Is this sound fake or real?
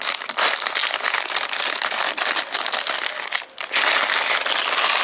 real